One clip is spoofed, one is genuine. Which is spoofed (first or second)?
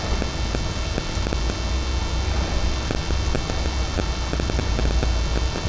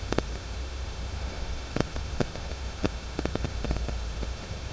second